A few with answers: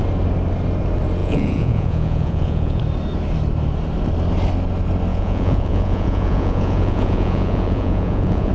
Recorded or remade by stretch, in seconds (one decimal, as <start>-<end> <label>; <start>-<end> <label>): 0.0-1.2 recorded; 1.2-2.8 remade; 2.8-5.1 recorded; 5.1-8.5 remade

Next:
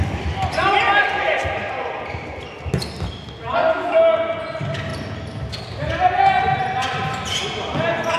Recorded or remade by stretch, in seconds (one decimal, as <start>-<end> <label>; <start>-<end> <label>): 0.0-8.2 recorded

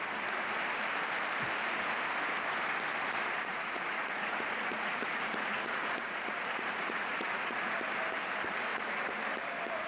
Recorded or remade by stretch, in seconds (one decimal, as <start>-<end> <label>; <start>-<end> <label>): 0.0-3.5 recorded; 3.5-7.7 remade; 7.7-8.7 recorded; 8.7-9.2 remade; 9.2-9.9 recorded